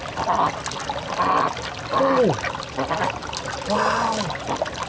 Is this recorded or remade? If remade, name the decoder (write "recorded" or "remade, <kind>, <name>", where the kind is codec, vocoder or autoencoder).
recorded